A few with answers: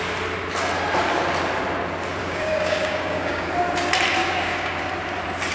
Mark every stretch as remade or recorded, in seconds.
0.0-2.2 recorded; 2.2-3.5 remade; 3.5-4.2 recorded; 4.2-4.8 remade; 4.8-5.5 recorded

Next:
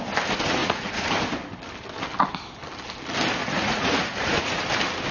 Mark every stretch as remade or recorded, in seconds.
0.0-0.6 recorded; 0.6-1.1 remade; 1.1-3.4 recorded; 3.4-4.6 remade; 4.6-5.1 recorded